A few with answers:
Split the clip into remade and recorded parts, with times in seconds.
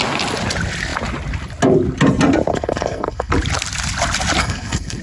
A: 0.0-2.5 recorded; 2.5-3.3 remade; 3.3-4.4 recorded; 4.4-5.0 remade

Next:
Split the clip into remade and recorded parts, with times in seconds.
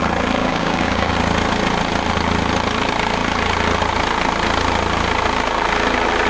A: 0.0-0.4 recorded; 0.4-1.1 remade; 1.1-6.3 recorded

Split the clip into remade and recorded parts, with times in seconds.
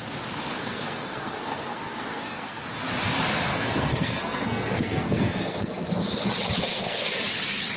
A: 0.0-0.5 recorded; 0.5-2.6 remade; 2.6-3.5 recorded; 3.5-5.9 remade; 5.9-6.7 recorded; 6.7-7.2 remade; 7.2-7.8 recorded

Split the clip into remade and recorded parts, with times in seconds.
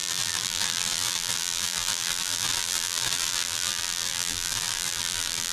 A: 0.0-5.5 remade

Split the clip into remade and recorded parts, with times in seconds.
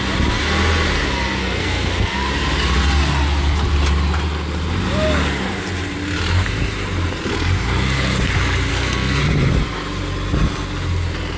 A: 0.0-1.4 recorded; 1.4-2.3 remade; 2.3-8.7 recorded; 8.7-9.2 remade; 9.2-11.4 recorded